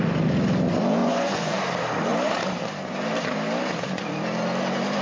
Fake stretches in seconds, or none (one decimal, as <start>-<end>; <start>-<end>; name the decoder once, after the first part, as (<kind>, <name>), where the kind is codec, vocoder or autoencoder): 1.0-1.6 (vocoder, Vocos)